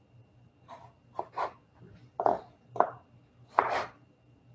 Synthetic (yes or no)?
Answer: yes